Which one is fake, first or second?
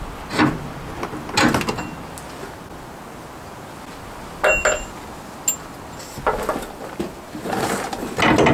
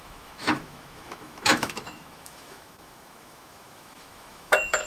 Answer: second